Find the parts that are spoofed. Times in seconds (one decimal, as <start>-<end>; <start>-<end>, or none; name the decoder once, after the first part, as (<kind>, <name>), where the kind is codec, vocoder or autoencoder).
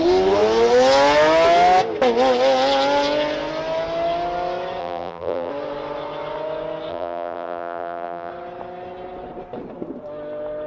4.8-5.5 (vocoder, BigVGAN v2); 6.9-8.3